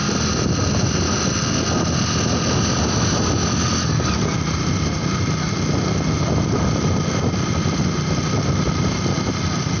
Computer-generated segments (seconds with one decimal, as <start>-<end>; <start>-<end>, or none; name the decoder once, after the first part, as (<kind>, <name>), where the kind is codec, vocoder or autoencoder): none